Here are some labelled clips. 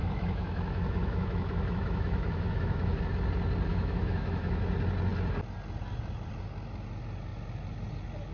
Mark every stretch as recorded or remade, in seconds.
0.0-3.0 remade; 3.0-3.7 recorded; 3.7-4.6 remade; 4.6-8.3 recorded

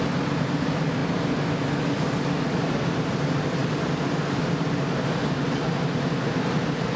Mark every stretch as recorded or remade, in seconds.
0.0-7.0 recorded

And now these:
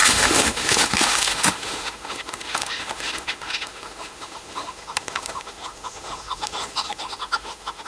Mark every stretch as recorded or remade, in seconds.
0.0-7.9 remade

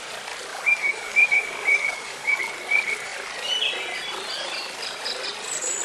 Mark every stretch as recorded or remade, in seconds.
0.0-0.5 recorded; 0.5-2.4 remade; 2.4-5.8 recorded